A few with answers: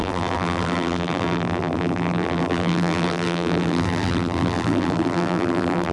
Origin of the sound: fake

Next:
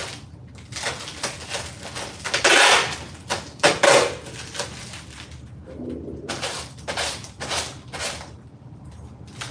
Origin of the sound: real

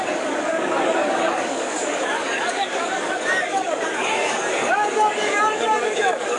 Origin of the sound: fake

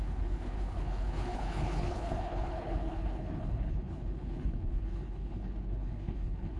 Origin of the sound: fake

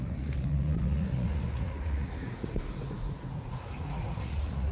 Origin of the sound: fake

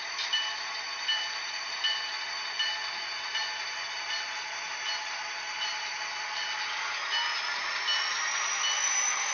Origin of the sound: real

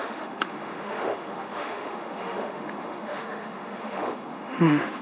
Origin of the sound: fake